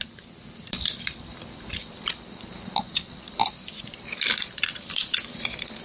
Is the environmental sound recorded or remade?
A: remade